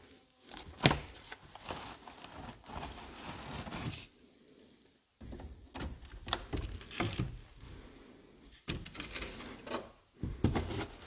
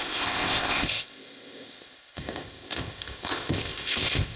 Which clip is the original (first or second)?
first